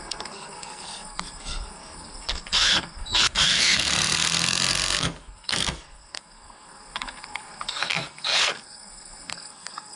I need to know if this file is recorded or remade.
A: remade